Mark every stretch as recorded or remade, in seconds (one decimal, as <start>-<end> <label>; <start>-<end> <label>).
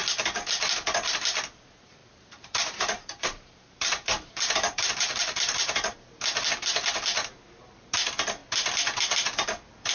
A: 0.0-2.0 recorded; 2.0-6.1 remade; 6.1-9.9 recorded